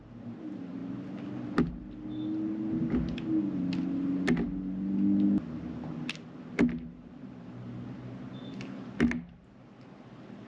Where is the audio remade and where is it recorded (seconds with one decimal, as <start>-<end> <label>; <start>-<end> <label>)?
0.0-10.5 recorded